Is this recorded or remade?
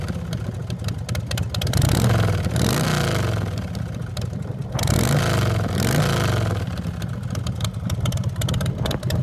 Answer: recorded